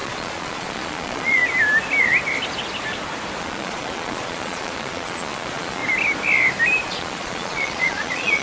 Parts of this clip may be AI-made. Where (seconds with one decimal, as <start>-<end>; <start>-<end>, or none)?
0.0-1.4; 3.4-5.8; 6.8-8.4